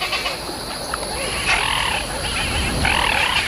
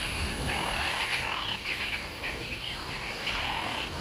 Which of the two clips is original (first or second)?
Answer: first